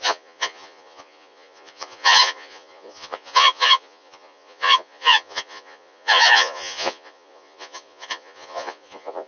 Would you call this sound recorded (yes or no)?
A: no